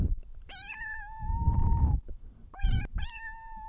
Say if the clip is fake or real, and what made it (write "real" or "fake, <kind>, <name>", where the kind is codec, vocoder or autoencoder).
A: fake, vocoder, BigVGAN v2